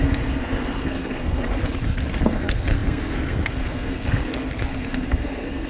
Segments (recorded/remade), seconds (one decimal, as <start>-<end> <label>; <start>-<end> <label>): 0.0-1.6 remade; 1.6-2.2 recorded; 2.2-5.7 remade